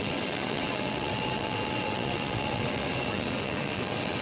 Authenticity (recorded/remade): remade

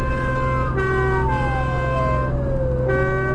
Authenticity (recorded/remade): recorded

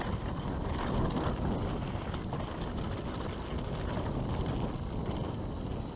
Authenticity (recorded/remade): recorded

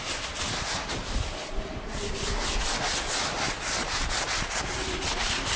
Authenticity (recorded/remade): recorded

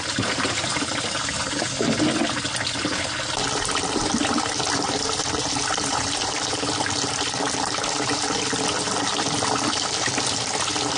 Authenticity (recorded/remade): recorded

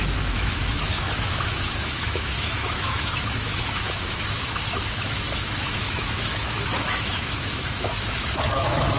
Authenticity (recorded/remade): remade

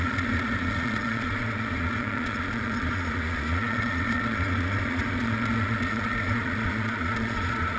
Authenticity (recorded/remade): remade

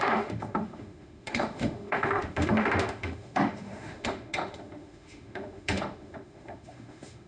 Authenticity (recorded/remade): remade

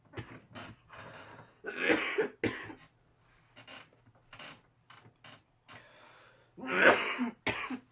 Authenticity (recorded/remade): recorded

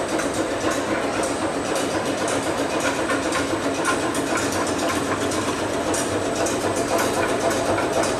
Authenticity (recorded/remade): recorded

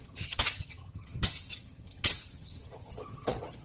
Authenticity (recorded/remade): remade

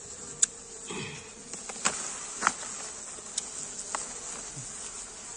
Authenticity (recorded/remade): recorded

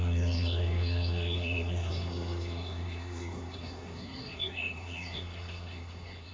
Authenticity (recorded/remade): remade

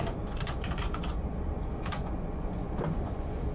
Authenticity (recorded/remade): remade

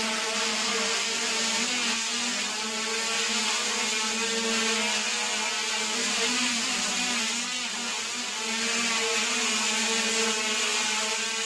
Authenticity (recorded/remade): recorded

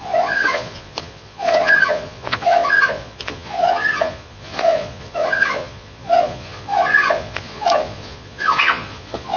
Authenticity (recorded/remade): remade